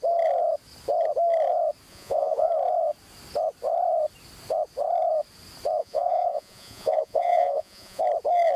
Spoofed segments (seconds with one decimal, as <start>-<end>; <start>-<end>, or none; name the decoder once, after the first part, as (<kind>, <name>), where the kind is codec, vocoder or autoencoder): 1.9-2.5 (vocoder, Vocos); 5.8-8.0